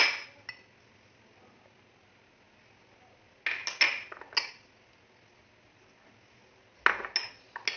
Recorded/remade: recorded